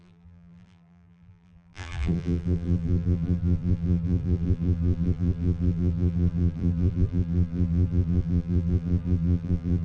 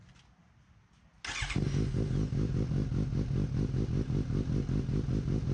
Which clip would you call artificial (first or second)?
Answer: first